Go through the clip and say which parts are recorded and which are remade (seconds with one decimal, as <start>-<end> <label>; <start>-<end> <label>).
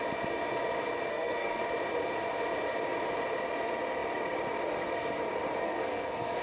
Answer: 0.0-1.1 recorded; 1.1-1.6 remade; 1.6-5.6 recorded; 5.6-6.4 remade